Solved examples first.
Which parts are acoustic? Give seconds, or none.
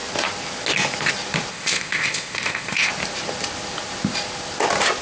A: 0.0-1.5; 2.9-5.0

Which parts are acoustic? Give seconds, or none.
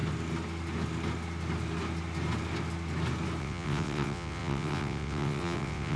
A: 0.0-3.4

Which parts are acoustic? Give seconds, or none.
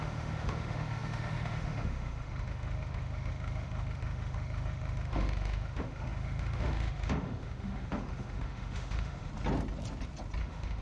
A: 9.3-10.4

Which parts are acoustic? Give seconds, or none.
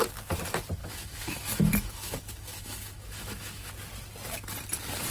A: 0.0-0.8; 3.7-5.1